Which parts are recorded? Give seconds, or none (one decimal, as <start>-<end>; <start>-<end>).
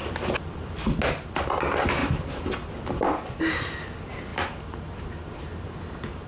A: 1.0-2.0; 2.5-4.3